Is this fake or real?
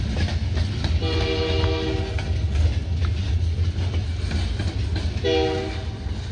real